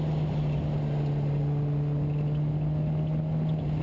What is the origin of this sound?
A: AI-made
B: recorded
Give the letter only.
B